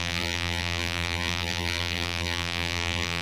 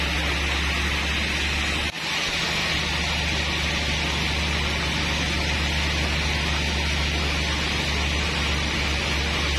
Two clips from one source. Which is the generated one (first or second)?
first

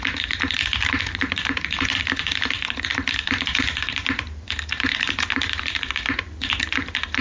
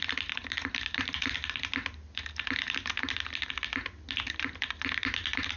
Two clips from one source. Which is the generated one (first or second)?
first